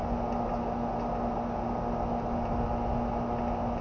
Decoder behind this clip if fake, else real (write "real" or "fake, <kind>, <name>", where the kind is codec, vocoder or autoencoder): real